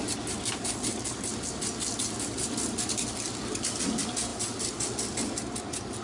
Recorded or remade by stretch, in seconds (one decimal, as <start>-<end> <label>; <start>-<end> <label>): 0.0-6.0 recorded